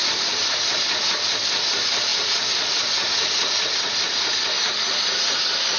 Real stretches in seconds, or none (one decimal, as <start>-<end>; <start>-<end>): 0.0-5.8